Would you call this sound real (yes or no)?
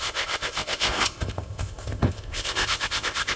no